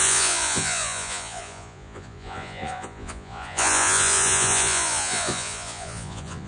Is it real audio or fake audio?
fake